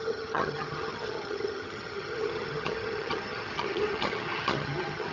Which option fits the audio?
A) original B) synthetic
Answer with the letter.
B